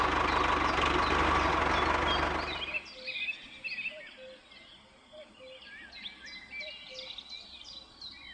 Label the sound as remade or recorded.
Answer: recorded